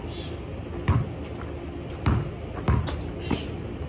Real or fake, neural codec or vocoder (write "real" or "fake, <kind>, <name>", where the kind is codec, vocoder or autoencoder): real